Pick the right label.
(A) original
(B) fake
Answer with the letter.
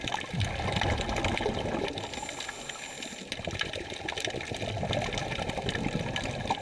A